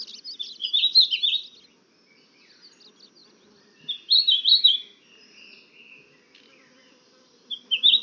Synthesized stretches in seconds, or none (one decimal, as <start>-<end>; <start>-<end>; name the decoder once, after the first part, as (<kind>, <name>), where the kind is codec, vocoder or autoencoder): 3.2-5.4 (vocoder, BigVGAN v2)